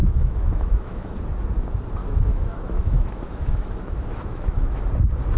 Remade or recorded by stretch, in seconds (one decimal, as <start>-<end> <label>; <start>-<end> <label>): 0.0-1.1 remade; 1.1-2.0 recorded; 2.0-4.8 remade; 4.8-5.4 recorded